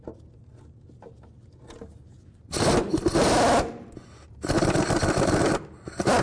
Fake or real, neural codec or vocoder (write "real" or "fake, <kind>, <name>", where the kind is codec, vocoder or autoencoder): real